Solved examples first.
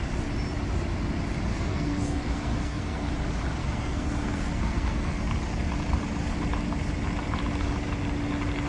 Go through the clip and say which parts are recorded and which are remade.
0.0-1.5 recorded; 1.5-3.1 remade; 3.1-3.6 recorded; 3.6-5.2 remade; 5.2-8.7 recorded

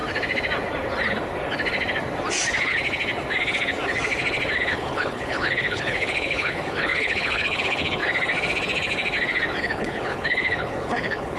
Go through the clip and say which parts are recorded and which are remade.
0.0-4.7 recorded; 4.7-8.0 remade; 8.0-9.6 recorded; 9.6-11.4 remade

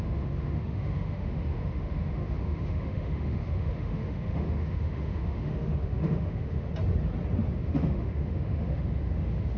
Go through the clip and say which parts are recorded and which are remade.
0.0-6.7 remade; 6.7-7.5 recorded; 7.5-9.6 remade

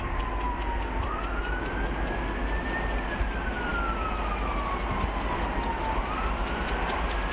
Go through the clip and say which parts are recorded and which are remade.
0.0-7.3 recorded

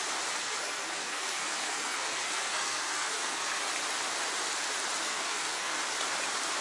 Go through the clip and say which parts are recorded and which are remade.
0.0-0.4 recorded; 0.4-3.6 remade; 3.6-5.0 recorded; 5.0-5.8 remade; 5.8-6.6 recorded

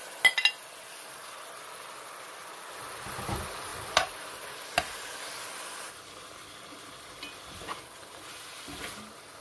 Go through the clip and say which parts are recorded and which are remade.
0.0-9.4 recorded